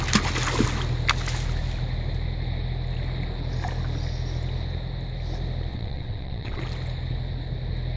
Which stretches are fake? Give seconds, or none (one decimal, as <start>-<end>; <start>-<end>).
5.7-6.6